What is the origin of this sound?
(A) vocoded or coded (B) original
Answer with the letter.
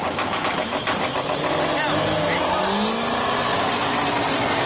B